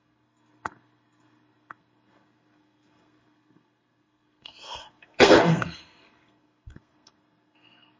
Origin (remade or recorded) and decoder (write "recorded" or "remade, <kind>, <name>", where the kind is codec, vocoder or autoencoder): remade, codec, SNAC